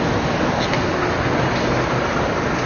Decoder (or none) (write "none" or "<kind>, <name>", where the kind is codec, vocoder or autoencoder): none